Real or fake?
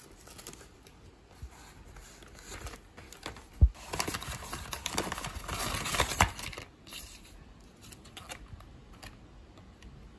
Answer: real